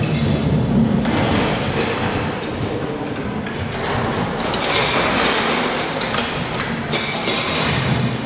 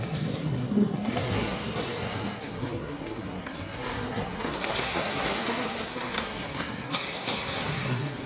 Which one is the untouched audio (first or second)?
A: first